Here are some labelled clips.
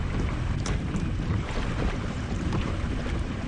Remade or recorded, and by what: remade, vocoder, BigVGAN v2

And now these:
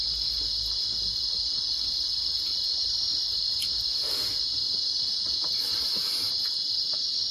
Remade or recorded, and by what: recorded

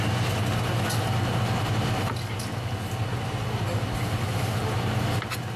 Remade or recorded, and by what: recorded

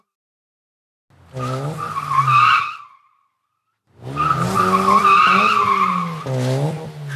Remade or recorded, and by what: recorded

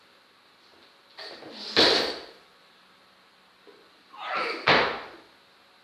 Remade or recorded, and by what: recorded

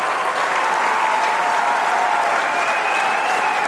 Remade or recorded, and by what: remade, vocoder, BigVGAN v2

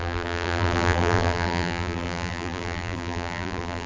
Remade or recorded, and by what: remade, vocoder, BigVGAN v2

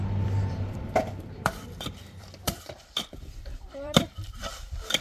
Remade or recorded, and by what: remade, vocoder, BigVGAN v2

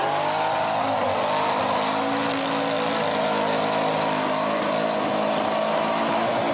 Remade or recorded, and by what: recorded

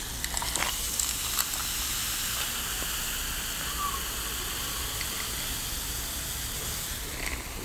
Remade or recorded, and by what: recorded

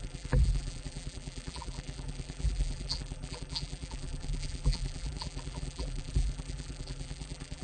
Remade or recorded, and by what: remade, vocoder, BigVGAN v2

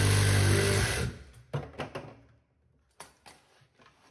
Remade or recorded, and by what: recorded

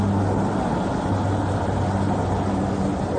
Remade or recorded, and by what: recorded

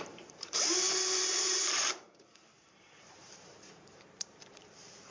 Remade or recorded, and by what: remade, vocoder, BigVGAN v2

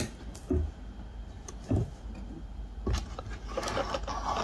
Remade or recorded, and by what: recorded